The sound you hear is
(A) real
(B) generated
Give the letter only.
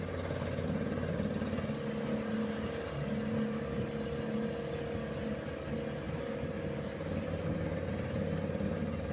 A